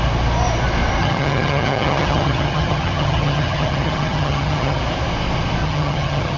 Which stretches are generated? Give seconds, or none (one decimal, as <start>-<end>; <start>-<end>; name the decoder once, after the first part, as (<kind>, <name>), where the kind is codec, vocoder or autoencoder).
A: 1.0-4.8 (vocoder, HiFi-GAN); 5.6-6.4